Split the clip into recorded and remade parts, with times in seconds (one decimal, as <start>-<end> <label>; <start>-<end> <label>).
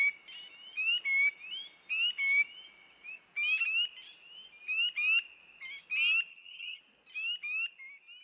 0.0-6.3 recorded; 6.3-6.8 remade; 6.8-8.2 recorded